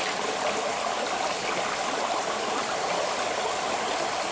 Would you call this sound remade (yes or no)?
no